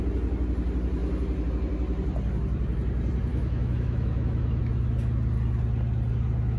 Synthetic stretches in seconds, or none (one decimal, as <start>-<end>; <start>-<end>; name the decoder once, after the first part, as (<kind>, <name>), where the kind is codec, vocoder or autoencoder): 3.3-4.6 (autoencoder, DAC-VAE)